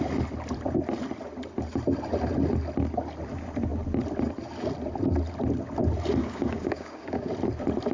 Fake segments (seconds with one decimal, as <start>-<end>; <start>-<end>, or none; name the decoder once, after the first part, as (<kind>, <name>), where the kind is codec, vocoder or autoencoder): 6.2-7.3 (codec, DAC)